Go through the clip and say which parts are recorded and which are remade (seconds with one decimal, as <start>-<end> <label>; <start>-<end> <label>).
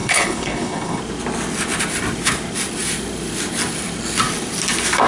0.0-1.0 remade; 1.0-5.1 recorded